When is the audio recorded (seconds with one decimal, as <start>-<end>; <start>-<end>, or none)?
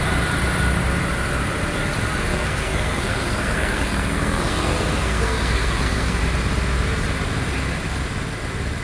0.0-2.3; 6.2-8.8